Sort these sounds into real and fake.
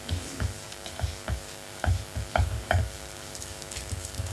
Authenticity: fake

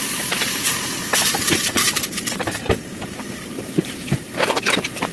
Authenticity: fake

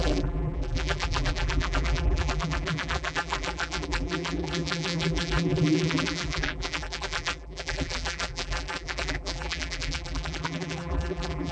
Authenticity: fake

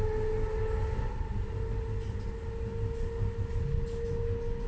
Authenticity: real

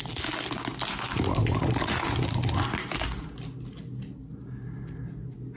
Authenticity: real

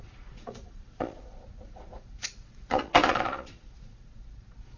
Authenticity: fake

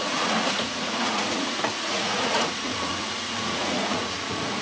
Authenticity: fake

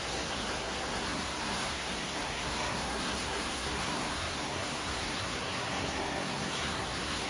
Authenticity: fake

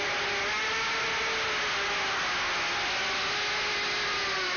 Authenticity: real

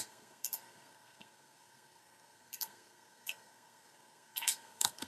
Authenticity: fake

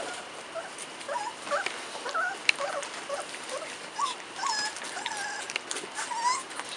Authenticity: real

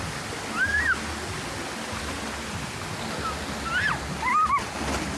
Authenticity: real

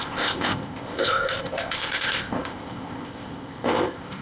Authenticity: fake